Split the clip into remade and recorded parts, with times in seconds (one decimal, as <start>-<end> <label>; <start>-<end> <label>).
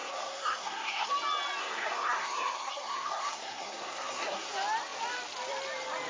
0.0-1.1 remade; 1.1-1.6 recorded; 1.6-4.5 remade; 4.5-6.1 recorded